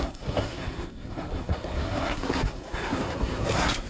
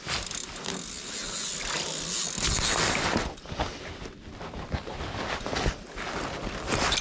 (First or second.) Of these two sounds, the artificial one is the first